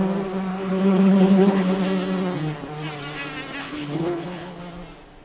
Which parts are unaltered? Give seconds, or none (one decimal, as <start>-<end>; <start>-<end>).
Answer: 0.0-0.5; 1.8-3.6; 4.6-5.2